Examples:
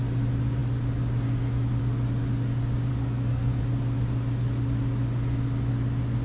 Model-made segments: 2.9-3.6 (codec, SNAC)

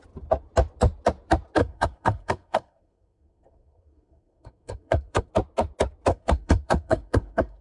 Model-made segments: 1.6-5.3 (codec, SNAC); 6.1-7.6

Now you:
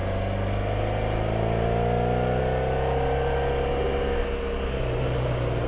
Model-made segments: none